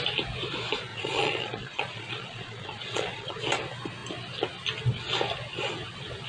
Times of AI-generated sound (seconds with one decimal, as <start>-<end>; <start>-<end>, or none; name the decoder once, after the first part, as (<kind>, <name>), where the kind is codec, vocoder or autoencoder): 0.9-3.4 (vocoder, Vocos)